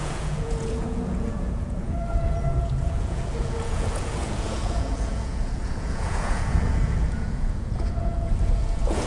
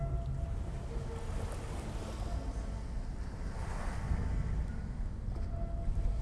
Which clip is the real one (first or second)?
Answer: second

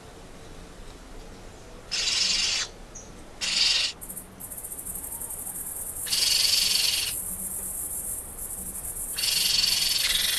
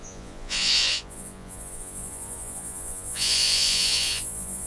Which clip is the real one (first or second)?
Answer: first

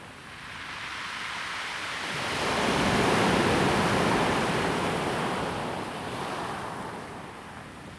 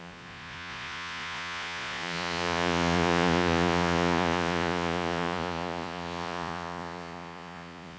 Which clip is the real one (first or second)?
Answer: first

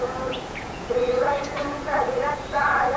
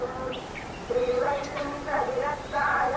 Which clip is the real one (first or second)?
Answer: second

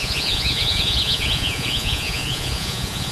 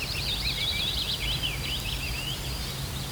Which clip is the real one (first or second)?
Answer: second